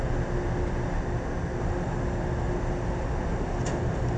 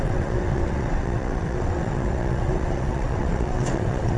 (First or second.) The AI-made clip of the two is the second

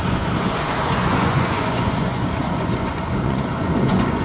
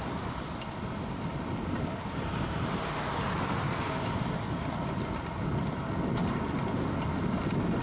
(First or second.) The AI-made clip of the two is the first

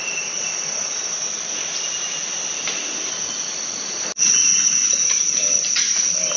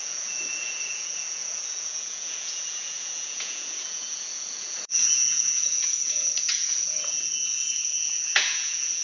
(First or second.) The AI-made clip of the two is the second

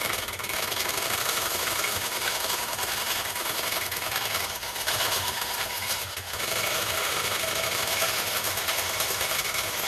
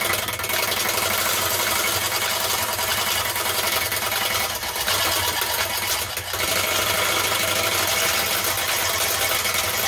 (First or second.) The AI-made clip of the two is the first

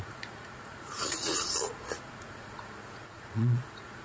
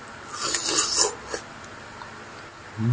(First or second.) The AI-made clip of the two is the first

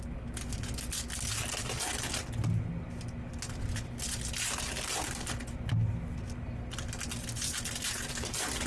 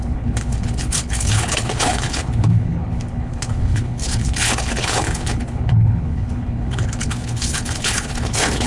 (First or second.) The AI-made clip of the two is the second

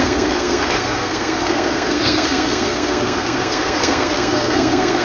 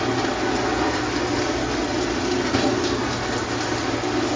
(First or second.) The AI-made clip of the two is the first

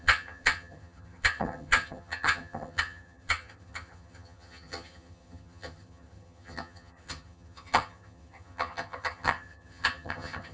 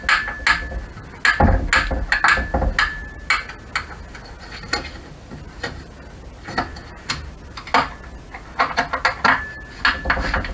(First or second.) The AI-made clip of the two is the first